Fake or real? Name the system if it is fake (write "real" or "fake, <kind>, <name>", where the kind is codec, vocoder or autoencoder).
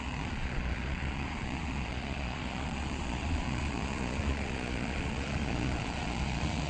fake, vocoder, Vocos